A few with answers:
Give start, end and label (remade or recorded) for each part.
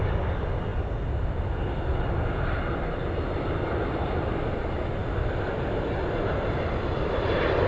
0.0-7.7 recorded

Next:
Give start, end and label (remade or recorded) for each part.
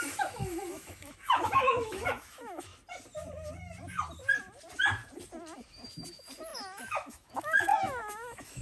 0.0-2.7 remade; 2.7-6.1 recorded; 6.1-8.6 remade